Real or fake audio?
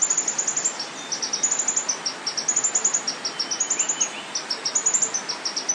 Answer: real